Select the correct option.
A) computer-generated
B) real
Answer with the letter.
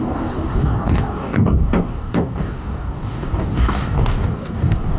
A